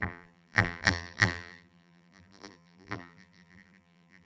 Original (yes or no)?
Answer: no